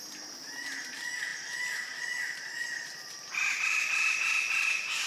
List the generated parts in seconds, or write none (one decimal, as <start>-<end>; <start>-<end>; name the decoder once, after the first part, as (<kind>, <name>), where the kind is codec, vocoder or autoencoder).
none